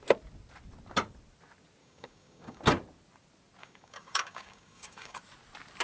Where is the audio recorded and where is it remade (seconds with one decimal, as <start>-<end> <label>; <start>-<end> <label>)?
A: 0.0-1.8 recorded; 1.8-2.6 remade; 2.6-3.6 recorded; 3.6-5.2 remade; 5.2-5.8 recorded